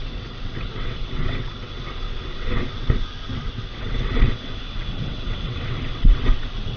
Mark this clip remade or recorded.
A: remade